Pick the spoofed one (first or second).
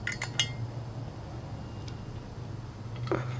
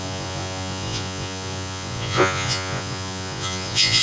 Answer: second